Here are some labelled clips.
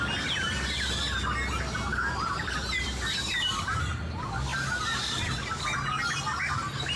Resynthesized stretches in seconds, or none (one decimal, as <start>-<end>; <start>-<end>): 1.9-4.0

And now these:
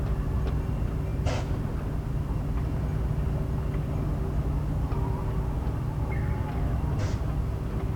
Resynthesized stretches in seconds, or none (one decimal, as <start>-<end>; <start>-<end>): none

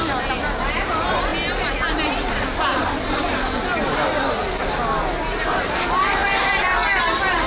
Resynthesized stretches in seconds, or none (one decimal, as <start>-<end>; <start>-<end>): none

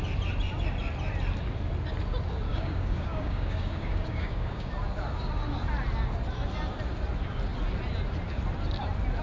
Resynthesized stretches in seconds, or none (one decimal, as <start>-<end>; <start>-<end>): 2.5-4.7

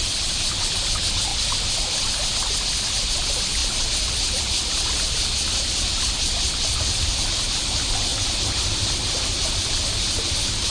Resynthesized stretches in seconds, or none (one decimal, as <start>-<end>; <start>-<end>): none

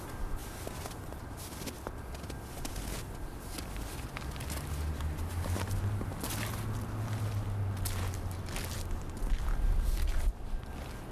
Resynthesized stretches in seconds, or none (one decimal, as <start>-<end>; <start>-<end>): none